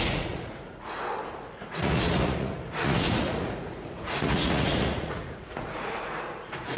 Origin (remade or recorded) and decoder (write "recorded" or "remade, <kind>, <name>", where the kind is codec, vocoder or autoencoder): remade, vocoder, Vocos